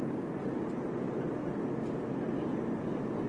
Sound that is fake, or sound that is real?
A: real